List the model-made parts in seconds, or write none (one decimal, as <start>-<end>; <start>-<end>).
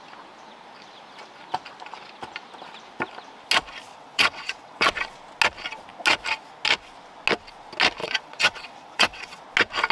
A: 3.9-4.9; 8.0-9.4